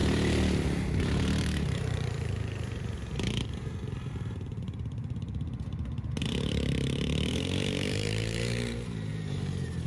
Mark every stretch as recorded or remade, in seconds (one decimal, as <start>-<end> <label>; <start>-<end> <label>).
0.0-1.0 recorded; 1.0-9.9 remade